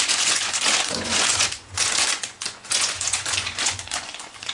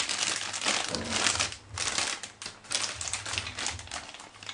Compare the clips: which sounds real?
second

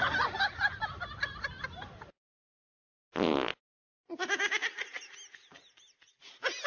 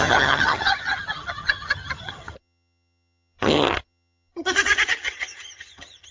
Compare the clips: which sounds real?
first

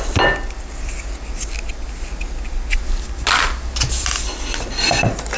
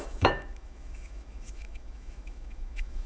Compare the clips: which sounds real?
first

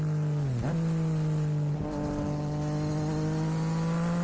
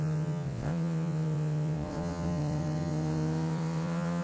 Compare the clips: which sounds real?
first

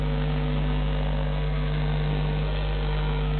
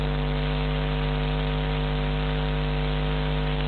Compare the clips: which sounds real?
second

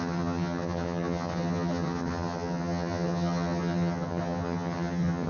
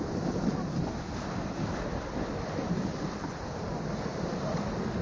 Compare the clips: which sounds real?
second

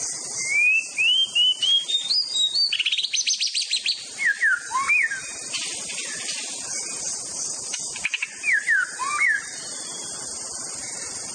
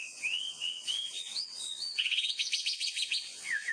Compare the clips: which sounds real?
first